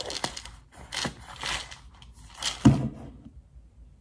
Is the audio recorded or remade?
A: recorded